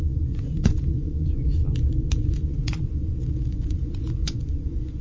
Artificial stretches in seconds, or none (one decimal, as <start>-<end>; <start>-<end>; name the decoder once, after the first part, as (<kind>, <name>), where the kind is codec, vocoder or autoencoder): 0.0-1.6 (vocoder, Vocos); 2.2-5.0